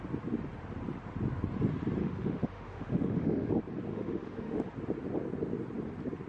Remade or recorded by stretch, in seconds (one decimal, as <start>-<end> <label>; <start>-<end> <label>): 0.0-2.0 recorded; 2.0-3.5 remade; 3.5-3.9 recorded; 3.9-4.7 remade; 4.7-6.3 recorded